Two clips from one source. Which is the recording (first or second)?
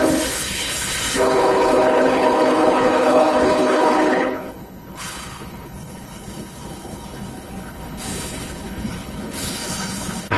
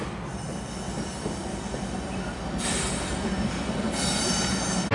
second